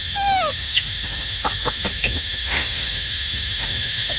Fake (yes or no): yes